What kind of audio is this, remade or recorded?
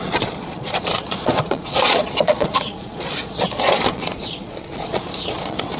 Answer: remade